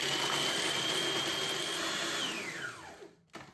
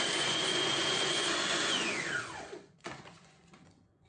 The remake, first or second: second